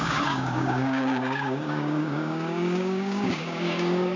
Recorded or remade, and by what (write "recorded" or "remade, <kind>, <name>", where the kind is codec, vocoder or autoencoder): remade, codec, DAC